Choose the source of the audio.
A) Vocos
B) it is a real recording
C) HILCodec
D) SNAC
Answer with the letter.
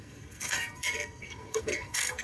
D